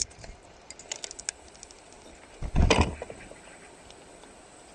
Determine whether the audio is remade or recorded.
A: recorded